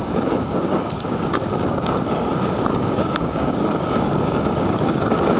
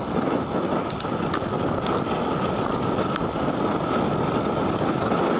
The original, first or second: second